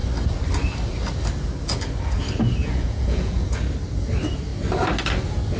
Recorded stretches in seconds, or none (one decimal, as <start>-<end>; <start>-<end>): 0.0-2.6; 3.6-5.6